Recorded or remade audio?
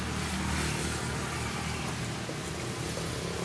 recorded